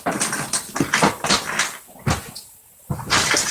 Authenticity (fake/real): real